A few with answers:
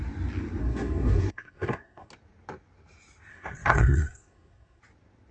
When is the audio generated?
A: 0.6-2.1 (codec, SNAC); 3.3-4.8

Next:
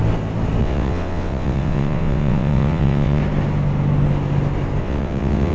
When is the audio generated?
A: 0.6-3.2 (vocoder, WaveNeXt); 4.8-5.5

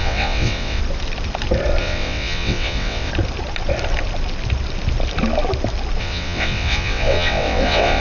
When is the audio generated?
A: 0.0-0.8 (vocoder, WaveNeXt); 1.8-3.1; 6.0-8.0

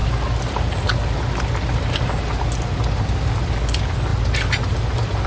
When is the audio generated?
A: 0.0-2.0 (vocoder, BigVGAN v2); 4.1-5.3